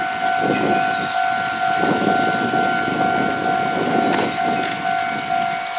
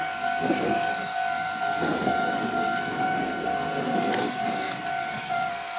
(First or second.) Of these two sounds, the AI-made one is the second